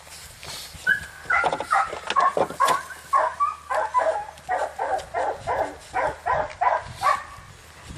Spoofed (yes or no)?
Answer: no